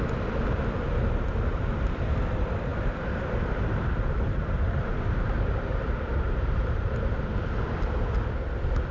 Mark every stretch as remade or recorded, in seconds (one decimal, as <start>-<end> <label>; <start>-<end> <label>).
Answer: 0.0-2.7 recorded; 2.7-6.9 remade; 6.9-8.9 recorded